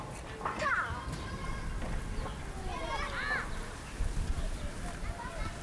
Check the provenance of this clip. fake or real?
real